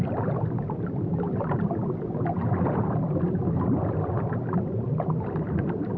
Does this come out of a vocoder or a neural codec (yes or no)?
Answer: no